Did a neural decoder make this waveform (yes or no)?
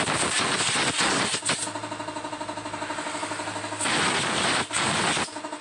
no